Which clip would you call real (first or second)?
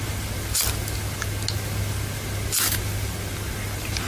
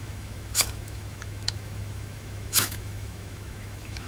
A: first